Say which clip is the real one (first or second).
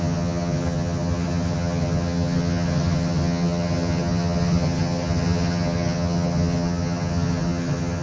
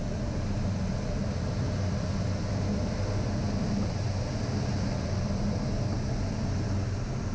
second